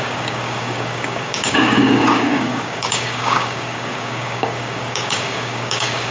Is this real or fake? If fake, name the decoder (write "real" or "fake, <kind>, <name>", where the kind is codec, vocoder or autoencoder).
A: fake, codec, DAC